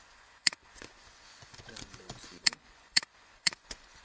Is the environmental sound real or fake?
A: fake